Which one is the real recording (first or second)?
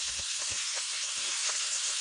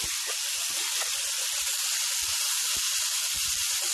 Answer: second